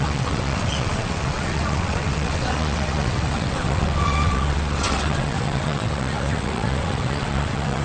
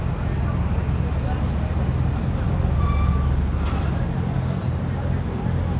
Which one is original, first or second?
second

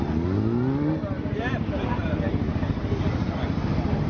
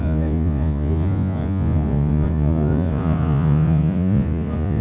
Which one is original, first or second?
first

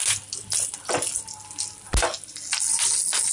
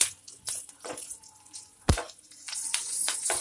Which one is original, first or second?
first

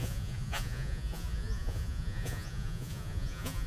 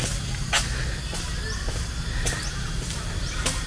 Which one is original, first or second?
second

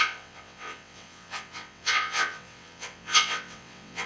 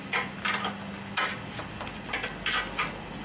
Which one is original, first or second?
second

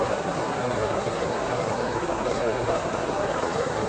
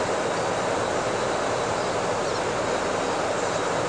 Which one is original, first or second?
second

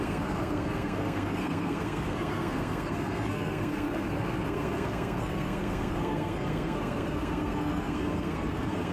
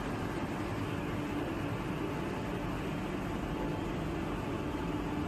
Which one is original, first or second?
second